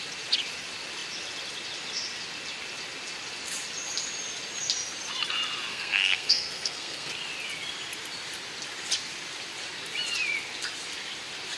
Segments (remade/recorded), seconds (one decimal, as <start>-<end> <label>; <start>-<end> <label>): 0.0-5.7 recorded; 5.7-7.1 remade; 7.1-11.6 recorded